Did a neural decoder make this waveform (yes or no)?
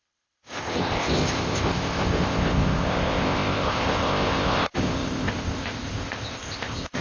yes